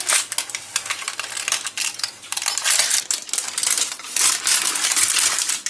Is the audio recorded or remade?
recorded